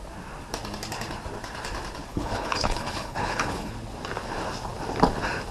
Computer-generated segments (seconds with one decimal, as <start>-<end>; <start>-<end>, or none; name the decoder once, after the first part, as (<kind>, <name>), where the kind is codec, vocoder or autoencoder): 2.1-3.7 (codec, HILCodec)